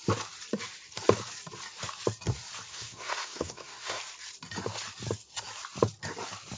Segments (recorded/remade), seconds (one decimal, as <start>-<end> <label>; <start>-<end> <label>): 0.0-2.7 recorded; 2.7-4.0 remade; 4.0-6.6 recorded